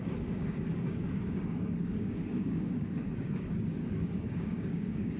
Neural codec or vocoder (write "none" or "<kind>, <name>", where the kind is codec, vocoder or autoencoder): codec, DAC